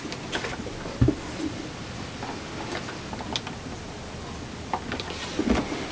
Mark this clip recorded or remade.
recorded